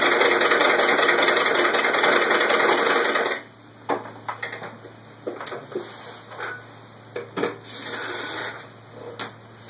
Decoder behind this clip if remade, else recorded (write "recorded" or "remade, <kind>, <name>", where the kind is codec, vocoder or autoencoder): recorded